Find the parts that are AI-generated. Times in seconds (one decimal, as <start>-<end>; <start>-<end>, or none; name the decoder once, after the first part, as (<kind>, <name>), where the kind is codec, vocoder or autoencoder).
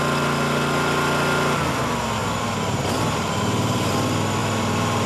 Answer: 2.2-3.9 (vocoder, BigVGAN v2); 4.4-5.1